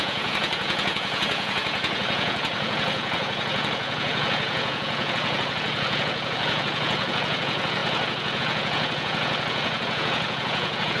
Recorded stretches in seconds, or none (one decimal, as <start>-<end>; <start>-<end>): none